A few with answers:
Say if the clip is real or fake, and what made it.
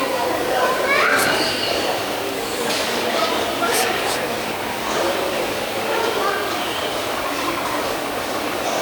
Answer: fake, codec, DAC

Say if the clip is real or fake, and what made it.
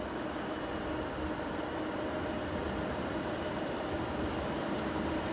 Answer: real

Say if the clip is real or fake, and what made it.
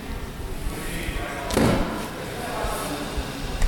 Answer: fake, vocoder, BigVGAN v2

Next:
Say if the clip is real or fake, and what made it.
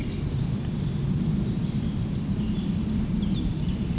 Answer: real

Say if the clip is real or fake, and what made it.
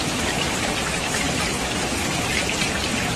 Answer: fake, vocoder, BigVGAN v2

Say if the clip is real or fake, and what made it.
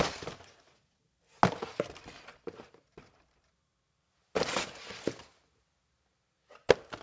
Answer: real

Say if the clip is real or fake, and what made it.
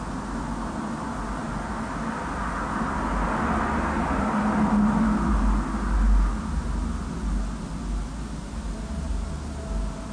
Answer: real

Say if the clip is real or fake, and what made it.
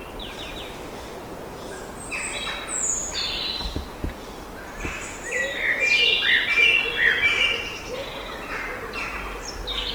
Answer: real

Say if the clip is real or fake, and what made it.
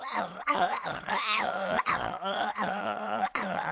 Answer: fake, vocoder, Vocos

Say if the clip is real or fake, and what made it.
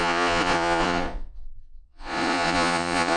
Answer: fake, vocoder, Vocos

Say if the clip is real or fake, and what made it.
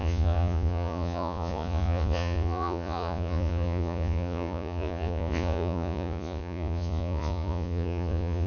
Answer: fake, vocoder, Vocos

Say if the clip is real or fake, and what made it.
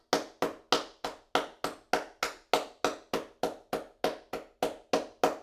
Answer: real